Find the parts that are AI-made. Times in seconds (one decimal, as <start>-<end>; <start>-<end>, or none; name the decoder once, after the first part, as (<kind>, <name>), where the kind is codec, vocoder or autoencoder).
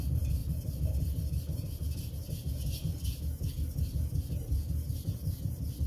none